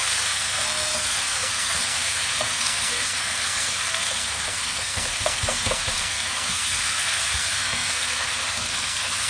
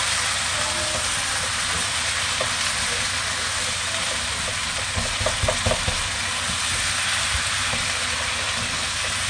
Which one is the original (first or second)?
second